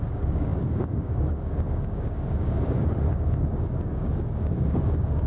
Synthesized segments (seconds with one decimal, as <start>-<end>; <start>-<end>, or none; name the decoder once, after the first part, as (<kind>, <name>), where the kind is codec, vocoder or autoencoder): 0.0-5.3 (codec, DAC)